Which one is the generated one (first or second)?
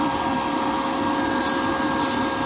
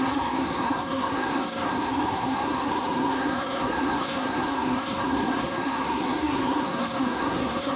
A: second